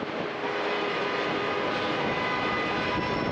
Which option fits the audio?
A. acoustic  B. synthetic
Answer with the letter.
A